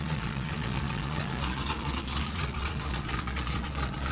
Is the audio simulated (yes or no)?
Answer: yes